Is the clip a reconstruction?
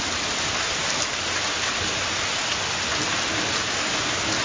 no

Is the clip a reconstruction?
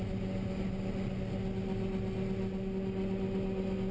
no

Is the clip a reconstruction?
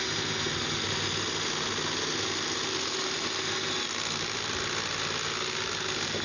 no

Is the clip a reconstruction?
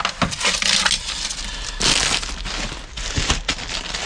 no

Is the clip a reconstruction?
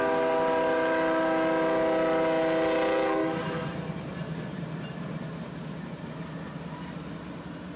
no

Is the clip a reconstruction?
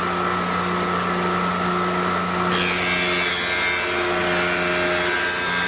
no